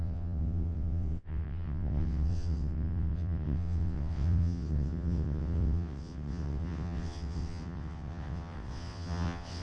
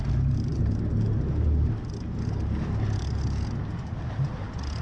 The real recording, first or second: second